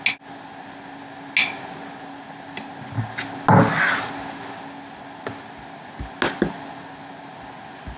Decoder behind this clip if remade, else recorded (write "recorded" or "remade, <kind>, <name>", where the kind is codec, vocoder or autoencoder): recorded